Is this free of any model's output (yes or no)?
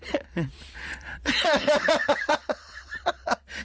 no